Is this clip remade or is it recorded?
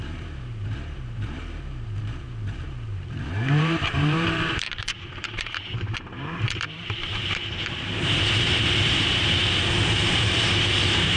remade